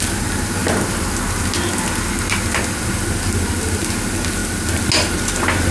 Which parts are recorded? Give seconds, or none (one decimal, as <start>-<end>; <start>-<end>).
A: 0.0-5.7